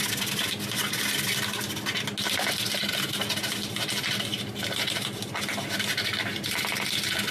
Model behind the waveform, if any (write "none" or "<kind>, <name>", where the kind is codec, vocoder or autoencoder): none